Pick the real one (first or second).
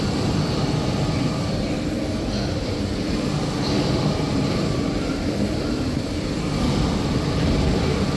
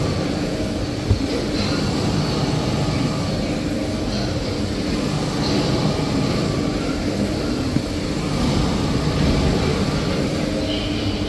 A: second